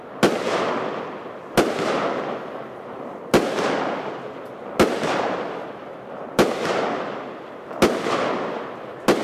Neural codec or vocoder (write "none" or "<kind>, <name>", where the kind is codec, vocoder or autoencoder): none